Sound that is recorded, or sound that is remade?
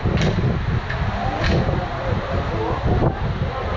recorded